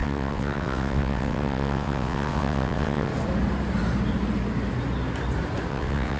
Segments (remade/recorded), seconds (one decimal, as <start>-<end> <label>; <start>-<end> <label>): 0.0-3.1 remade; 3.1-5.7 recorded; 5.7-6.2 remade